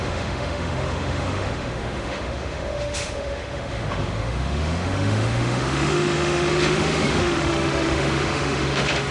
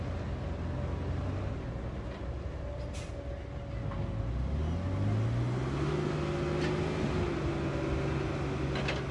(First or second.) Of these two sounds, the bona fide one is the second